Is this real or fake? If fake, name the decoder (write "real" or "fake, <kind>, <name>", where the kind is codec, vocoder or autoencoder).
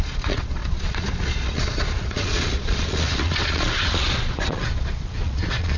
fake, vocoder, Vocos